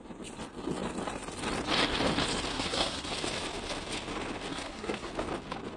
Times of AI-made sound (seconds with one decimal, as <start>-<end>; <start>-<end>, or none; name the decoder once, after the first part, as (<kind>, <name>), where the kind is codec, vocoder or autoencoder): 2.5-3.1 (codec, SNAC); 4.5-5.1